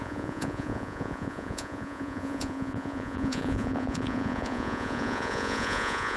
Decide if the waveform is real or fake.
fake